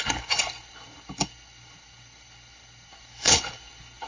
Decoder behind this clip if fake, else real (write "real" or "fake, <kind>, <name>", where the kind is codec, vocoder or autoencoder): fake, codec, HILCodec